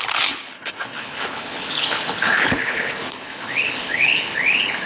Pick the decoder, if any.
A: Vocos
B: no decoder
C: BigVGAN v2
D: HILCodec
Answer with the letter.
D